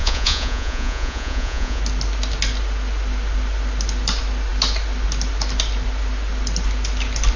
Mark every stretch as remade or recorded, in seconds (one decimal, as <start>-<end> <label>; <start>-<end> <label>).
0.0-1.8 remade; 1.8-7.4 recorded